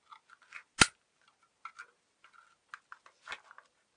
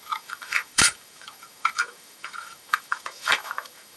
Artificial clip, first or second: second